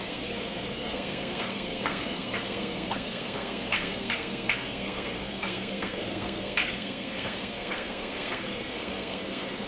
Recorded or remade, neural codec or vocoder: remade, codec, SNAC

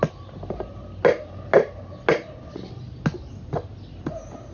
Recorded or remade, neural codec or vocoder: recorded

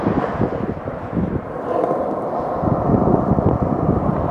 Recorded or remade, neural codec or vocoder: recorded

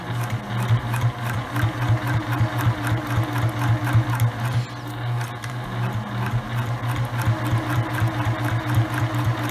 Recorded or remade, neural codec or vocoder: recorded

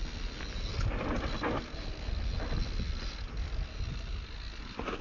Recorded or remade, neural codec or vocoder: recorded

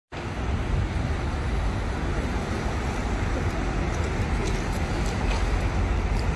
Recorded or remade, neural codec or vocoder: recorded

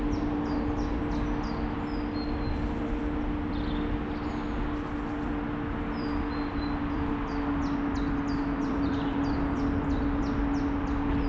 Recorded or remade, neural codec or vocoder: recorded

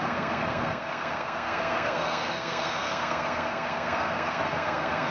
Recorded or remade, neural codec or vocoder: remade, codec, SNAC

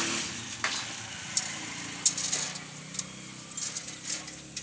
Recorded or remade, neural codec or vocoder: recorded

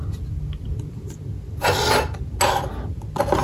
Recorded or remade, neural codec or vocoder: recorded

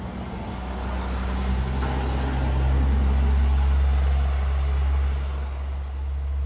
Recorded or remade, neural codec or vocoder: recorded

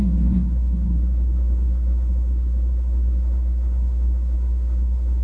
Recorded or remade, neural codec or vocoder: remade, codec, SNAC